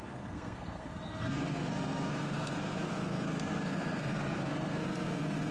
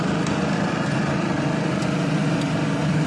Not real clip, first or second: first